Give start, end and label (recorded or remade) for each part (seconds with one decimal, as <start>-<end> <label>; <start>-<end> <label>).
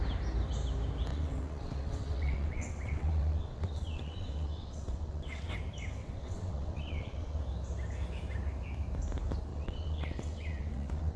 0.0-1.1 recorded; 1.1-5.5 remade; 5.5-6.0 recorded; 6.0-7.4 remade; 7.4-9.5 recorded; 9.5-11.2 remade